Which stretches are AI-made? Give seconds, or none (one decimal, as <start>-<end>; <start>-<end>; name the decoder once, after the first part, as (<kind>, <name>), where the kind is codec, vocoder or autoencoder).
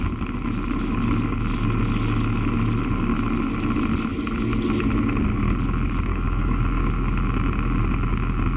6.1-6.6 (codec, DAC)